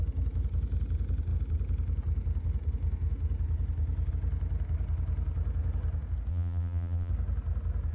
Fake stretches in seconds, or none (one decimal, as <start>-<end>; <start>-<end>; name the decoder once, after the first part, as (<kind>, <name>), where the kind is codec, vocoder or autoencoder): 6.3-7.1 (vocoder, BigVGAN v2)